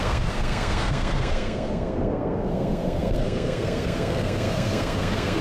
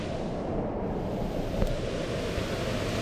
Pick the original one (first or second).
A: second